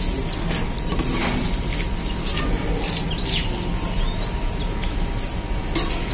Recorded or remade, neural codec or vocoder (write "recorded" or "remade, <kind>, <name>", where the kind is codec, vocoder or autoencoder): recorded